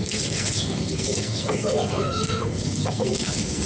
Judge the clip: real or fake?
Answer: fake